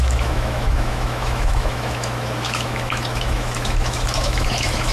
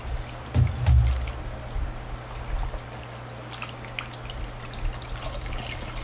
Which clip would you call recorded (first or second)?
second